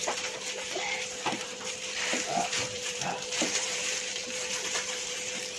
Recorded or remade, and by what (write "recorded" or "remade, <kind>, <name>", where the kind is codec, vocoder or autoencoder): remade, vocoder, BigVGAN v2